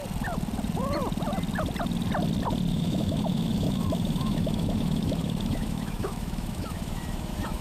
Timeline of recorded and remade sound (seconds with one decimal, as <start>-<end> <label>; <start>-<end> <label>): 0.0-2.7 recorded; 2.7-7.6 remade